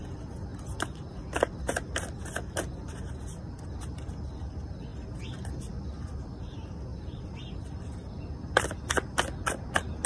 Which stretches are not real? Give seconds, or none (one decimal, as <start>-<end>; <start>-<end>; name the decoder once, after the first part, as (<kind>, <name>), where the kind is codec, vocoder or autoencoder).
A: 6.9-7.9 (vocoder, BigVGAN v2)